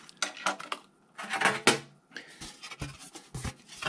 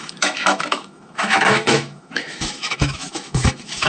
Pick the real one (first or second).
first